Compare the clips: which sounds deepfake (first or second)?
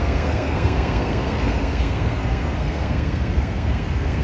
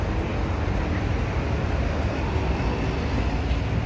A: first